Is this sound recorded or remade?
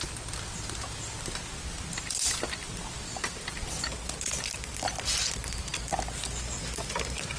recorded